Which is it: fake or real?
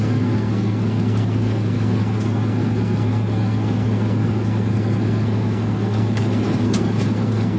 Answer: fake